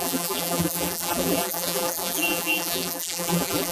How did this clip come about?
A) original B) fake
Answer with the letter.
B